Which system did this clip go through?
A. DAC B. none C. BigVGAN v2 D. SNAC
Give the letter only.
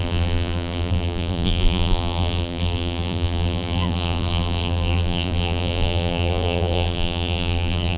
C